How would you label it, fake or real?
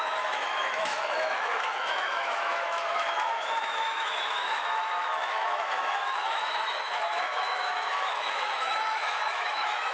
fake